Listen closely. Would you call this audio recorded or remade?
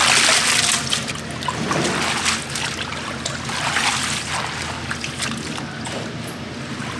recorded